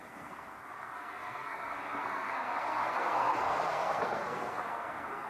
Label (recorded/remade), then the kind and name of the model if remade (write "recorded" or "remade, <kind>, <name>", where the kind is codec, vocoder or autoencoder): remade, codec, SNAC